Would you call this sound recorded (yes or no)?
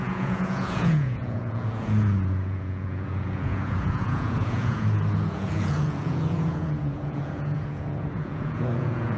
no